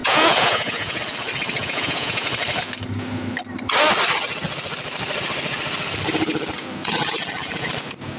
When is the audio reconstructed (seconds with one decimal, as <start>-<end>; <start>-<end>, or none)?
0.0-1.0; 1.6-2.3